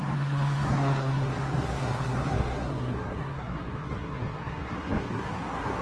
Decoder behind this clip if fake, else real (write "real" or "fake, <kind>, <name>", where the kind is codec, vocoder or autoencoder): fake, codec, SNAC